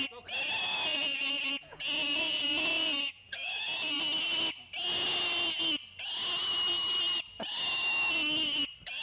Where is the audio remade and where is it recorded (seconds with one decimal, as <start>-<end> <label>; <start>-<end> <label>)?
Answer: 0.0-0.9 recorded; 0.9-4.0 remade; 4.0-9.0 recorded